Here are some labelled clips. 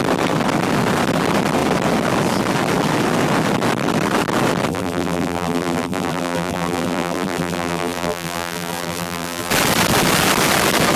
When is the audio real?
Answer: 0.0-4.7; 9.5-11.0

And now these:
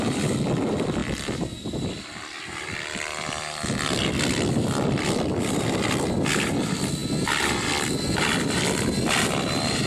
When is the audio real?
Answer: 1.0-1.6; 7.0-8.0

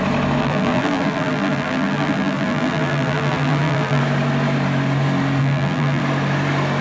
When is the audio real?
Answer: 0.0-0.4; 4.0-5.4; 6.0-6.8